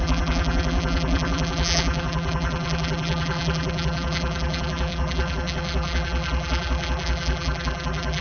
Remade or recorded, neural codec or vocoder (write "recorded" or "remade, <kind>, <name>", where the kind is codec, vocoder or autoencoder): remade, vocoder, BigVGAN v2